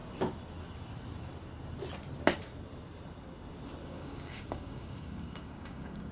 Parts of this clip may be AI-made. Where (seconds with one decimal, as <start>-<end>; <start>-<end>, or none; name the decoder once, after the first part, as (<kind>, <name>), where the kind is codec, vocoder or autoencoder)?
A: 3.8-6.1 (codec, DAC)